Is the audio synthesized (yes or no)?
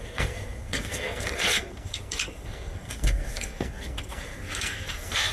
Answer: yes